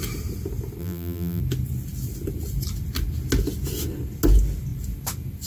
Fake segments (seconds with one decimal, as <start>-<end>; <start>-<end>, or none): 0.8-1.4